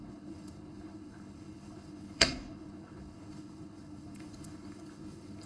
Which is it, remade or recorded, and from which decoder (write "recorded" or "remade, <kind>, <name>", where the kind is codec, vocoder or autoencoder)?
remade, codec, HILCodec